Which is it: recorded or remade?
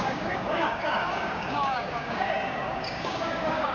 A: remade